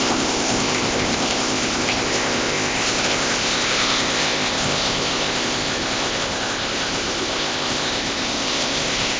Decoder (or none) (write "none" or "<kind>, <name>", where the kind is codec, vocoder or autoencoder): codec, ZipCodec